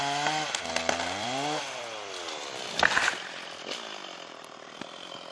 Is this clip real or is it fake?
fake